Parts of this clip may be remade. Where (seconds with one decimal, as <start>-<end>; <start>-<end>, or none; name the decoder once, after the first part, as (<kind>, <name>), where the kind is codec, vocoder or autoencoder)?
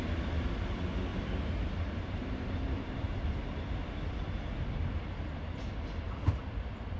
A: 1.1-3.4 (vocoder, BigVGAN v2)